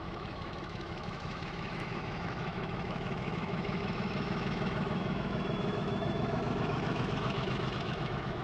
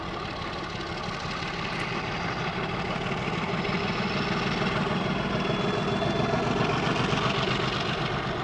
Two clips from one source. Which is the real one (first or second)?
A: second